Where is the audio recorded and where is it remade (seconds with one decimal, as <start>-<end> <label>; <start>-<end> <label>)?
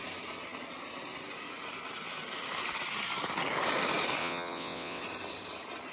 0.0-4.2 recorded; 4.2-5.0 remade; 5.0-5.9 recorded